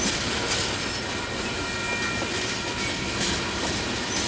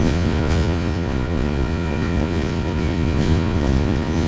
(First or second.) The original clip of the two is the first